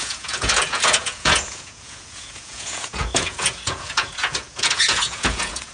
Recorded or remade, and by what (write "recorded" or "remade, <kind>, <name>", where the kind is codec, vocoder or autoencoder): remade, vocoder, Vocos